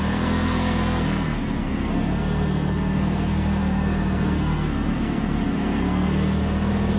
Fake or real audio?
fake